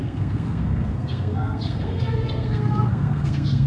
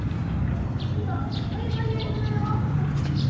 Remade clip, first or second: first